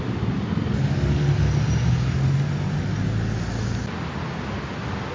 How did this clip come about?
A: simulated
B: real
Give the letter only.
B